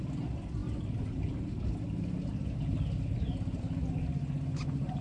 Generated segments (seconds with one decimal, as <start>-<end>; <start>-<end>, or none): none